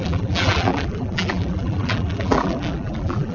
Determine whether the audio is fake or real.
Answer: fake